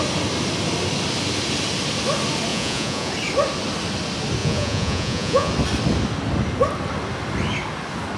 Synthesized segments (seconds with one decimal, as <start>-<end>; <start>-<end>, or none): 2.5-3.1; 4.4-5.5